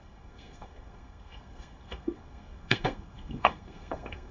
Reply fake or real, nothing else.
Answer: fake